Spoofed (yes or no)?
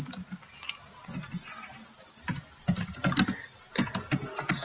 no